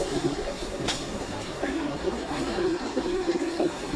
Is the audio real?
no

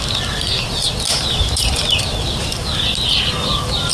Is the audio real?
yes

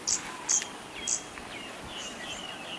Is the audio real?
yes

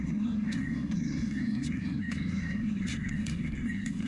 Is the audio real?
no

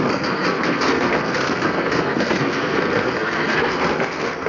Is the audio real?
no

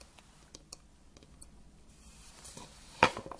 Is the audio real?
yes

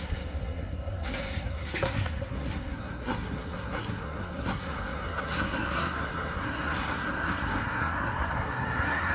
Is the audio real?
no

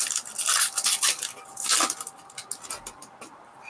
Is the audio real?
yes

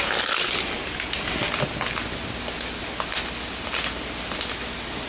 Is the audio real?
yes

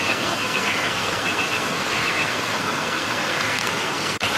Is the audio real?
no